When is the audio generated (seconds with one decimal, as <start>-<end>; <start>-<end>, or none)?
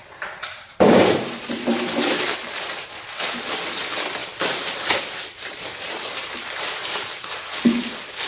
0.0-3.8; 4.2-7.5